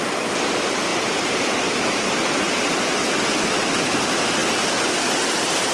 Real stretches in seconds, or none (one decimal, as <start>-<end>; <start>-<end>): 4.4-5.7